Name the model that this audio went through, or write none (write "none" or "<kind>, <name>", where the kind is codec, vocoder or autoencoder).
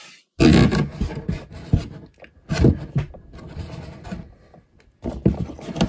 none